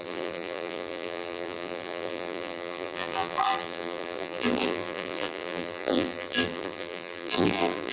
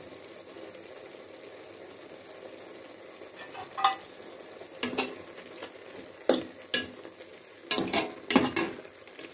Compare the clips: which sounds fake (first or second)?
first